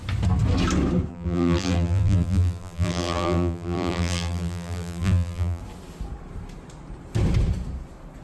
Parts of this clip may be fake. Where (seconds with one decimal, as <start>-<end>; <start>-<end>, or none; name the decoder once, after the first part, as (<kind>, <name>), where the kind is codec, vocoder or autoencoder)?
1.1-5.6 (vocoder, BigVGAN v2)